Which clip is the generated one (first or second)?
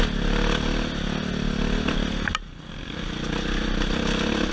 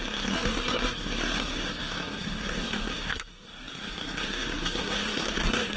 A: second